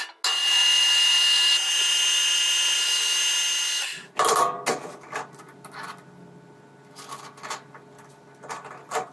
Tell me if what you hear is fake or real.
real